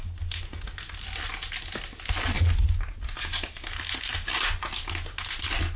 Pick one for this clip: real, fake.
real